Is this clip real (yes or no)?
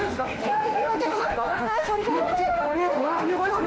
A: no